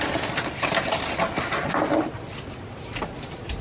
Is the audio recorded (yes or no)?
yes